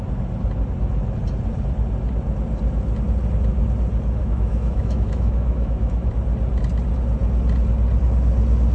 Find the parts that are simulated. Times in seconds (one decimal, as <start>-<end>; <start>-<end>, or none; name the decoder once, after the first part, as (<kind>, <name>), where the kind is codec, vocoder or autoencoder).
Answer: 4.2-6.1 (autoencoder, DAC-VAE)